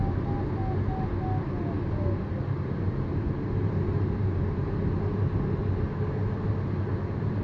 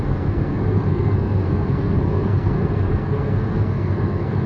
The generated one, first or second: second